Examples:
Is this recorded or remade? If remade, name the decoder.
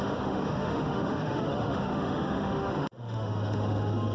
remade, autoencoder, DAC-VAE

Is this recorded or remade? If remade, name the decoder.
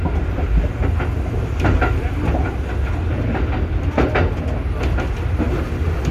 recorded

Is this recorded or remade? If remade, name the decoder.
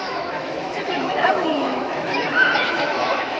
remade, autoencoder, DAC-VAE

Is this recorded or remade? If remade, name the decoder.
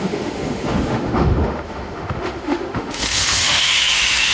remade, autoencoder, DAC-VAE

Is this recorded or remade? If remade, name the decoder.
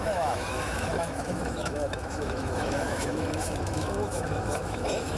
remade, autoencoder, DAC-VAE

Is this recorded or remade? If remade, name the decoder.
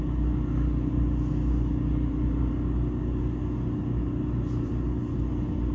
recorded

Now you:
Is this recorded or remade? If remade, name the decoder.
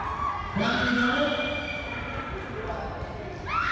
recorded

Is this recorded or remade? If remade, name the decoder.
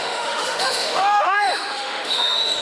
remade, autoencoder, DAC-VAE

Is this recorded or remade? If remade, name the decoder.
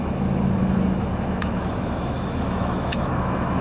remade, autoencoder, DAC-VAE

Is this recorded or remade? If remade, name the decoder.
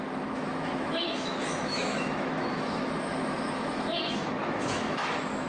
remade, autoencoder, DAC-VAE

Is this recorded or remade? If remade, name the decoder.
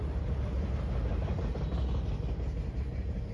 recorded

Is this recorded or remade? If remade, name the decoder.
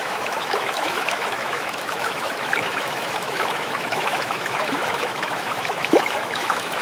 remade, autoencoder, DAC-VAE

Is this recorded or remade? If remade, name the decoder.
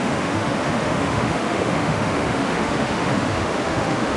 remade, autoencoder, DAC-VAE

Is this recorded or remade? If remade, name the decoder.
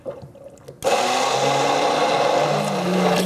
recorded